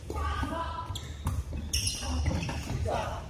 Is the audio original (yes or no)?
yes